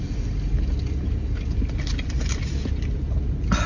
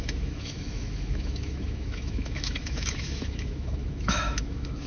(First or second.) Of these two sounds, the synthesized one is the second